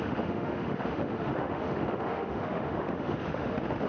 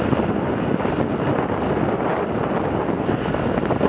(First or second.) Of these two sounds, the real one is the second